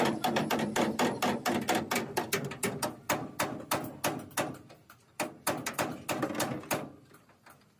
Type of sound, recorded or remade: recorded